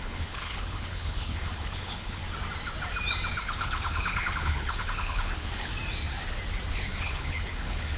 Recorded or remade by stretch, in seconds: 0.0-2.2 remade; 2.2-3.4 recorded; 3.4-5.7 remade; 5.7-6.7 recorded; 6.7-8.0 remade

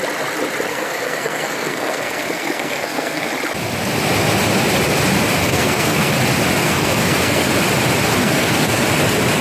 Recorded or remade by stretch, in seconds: 0.0-0.7 recorded; 0.7-3.3 remade; 3.3-5.4 recorded; 5.4-6.1 remade; 6.1-6.6 recorded; 6.6-7.5 remade; 7.5-8.2 recorded; 8.2-8.8 remade; 8.8-9.4 recorded

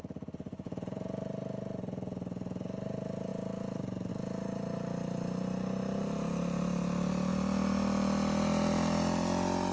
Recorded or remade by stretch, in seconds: 0.0-9.7 recorded

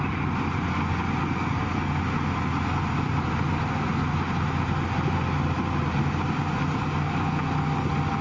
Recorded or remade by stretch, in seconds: 0.0-1.2 recorded; 1.2-2.0 remade; 2.0-8.2 recorded

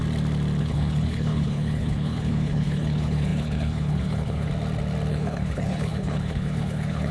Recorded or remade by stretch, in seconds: 0.0-0.6 recorded; 0.6-4.5 remade; 4.5-5.1 recorded; 5.1-7.1 remade

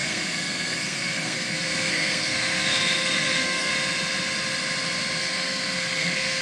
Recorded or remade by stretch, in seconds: 0.0-3.7 remade; 3.7-5.2 recorded; 5.2-6.4 remade